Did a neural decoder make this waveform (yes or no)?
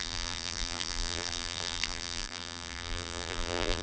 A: yes